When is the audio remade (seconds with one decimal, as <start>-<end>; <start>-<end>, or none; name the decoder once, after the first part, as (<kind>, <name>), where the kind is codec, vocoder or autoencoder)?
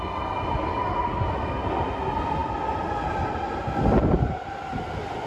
none